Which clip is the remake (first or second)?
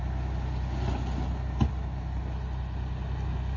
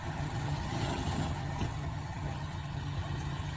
second